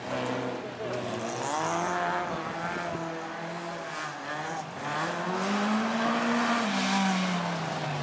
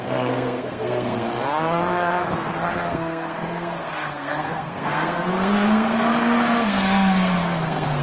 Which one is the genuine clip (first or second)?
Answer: first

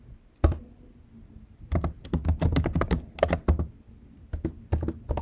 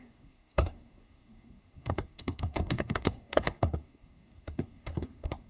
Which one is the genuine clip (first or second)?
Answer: first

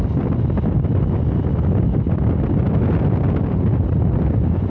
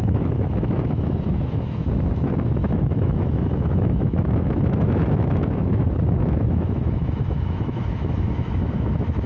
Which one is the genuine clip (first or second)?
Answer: first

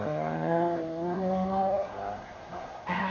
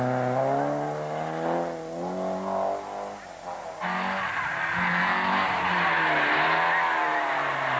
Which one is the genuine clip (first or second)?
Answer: second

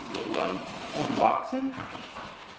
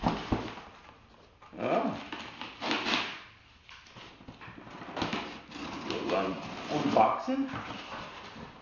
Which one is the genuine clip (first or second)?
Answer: second